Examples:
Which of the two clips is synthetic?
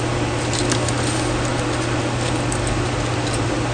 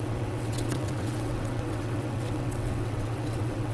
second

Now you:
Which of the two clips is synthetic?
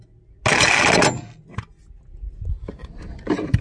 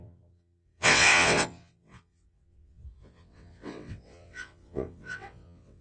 second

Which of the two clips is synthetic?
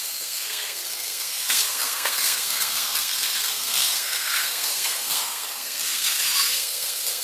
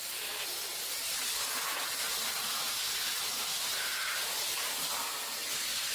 first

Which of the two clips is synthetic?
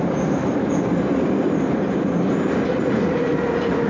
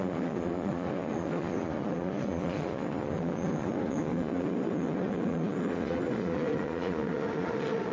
second